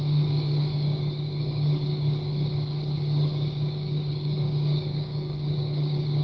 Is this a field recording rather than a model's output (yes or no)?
no